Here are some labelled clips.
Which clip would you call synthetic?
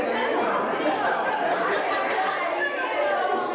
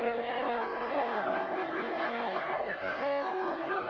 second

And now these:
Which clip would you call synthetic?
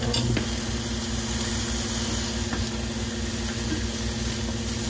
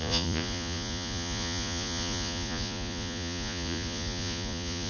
second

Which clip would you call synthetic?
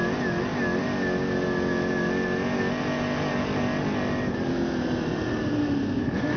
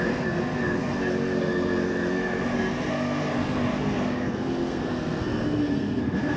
second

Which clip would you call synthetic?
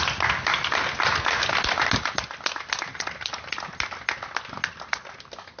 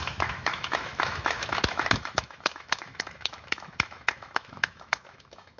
second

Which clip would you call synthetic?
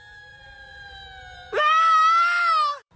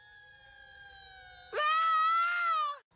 first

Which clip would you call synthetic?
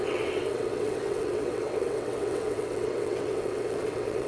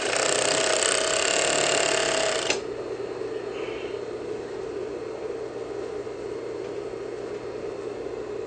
first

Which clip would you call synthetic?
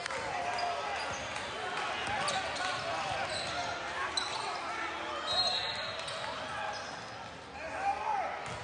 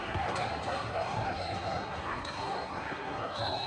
second